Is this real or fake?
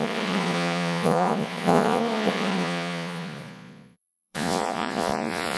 fake